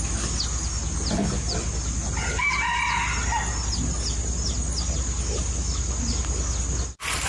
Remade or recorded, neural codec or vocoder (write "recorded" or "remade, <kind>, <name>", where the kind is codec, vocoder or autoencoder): recorded